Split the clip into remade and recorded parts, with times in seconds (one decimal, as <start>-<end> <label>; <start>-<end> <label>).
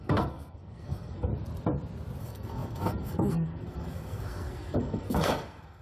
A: 0.0-1.3 remade; 1.3-2.2 recorded; 2.2-5.8 remade